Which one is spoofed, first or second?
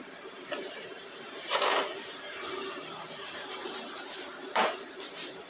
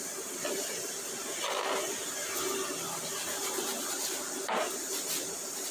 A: first